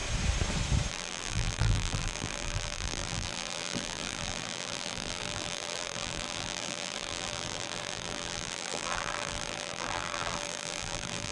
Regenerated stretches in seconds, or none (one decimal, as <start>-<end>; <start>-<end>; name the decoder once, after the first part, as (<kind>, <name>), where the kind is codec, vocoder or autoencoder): 0.9-11.3 (vocoder, BigVGAN v2)